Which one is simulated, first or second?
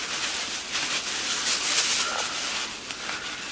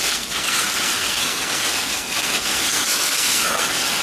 second